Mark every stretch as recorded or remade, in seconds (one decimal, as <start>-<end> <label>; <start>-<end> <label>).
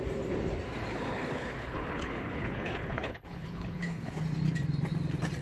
0.0-0.9 recorded; 0.9-4.1 remade; 4.1-5.4 recorded